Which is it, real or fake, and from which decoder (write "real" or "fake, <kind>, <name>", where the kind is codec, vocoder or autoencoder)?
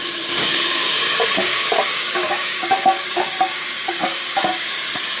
fake, codec, DAC